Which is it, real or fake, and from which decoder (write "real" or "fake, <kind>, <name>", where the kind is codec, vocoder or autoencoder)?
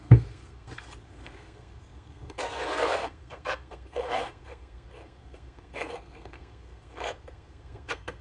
fake, codec, SNAC